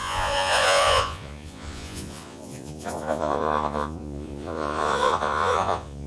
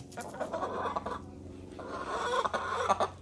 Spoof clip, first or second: first